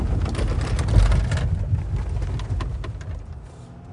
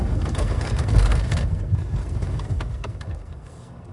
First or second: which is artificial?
second